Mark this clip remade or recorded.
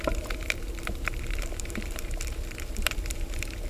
remade